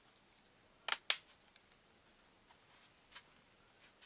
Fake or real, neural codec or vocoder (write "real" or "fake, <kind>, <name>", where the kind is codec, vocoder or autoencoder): real